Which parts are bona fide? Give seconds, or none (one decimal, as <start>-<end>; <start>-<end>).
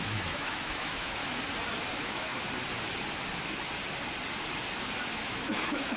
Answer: 1.2-1.9; 2.3-5.1